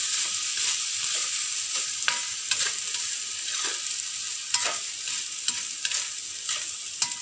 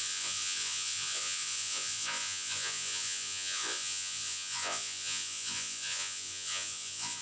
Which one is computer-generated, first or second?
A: second